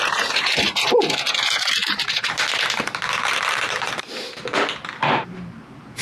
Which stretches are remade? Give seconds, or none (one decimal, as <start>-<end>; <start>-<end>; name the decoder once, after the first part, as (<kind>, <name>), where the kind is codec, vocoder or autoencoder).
0.0-6.0 (vocoder, BigVGAN v2)